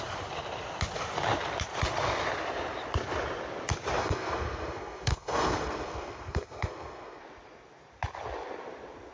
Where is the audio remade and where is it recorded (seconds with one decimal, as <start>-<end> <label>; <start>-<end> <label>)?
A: 0.0-4.0 recorded; 4.0-7.2 remade; 7.2-9.1 recorded